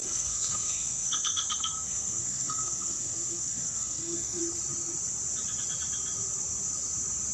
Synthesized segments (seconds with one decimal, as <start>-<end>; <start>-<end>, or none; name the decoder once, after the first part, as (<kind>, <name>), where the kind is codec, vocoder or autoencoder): 0.0-4.4 (codec, SNAC)